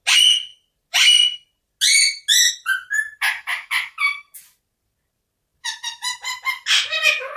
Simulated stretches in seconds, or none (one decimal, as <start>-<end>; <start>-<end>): none